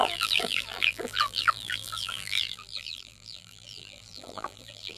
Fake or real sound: fake